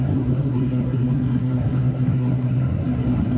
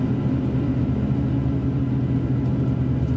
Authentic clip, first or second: second